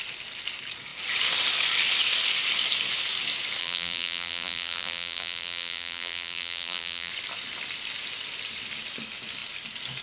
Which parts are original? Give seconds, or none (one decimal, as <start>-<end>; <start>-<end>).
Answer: 0.0-3.6; 7.1-10.0